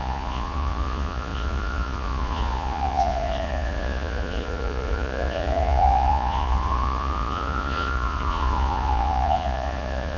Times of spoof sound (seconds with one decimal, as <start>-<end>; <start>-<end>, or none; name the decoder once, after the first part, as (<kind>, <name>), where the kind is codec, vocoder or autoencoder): 0.0-10.2 (vocoder, Vocos)